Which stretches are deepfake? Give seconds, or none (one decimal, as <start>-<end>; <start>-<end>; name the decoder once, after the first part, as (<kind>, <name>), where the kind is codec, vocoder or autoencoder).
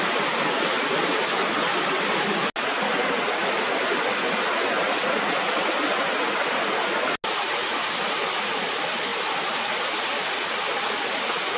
none